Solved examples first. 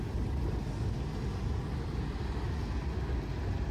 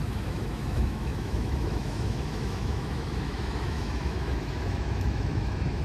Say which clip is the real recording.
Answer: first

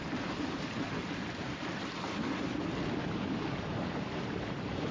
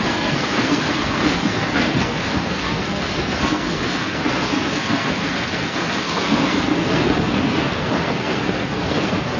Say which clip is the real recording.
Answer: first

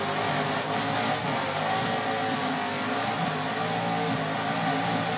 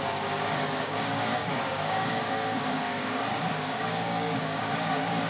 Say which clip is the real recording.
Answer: first